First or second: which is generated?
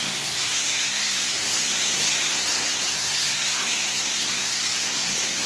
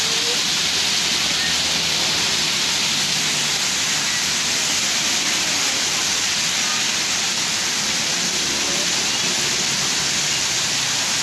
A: first